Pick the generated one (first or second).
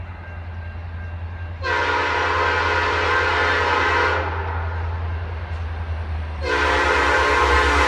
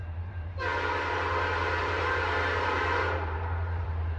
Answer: second